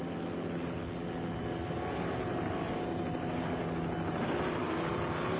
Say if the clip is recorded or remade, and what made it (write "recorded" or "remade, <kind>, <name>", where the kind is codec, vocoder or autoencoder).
recorded